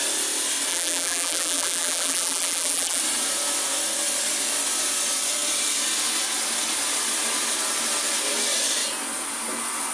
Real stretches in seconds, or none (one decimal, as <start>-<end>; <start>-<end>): 0.0-0.7; 3.0-9.9